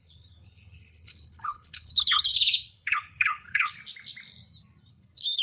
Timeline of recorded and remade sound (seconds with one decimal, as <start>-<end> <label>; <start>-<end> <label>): 0.0-3.8 remade; 3.8-4.9 recorded; 4.9-5.4 remade